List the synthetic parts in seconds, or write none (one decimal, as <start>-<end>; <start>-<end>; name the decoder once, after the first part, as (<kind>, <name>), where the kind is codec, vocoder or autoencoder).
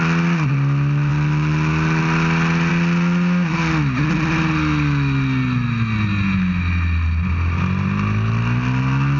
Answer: none